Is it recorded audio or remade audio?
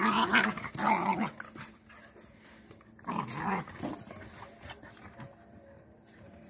recorded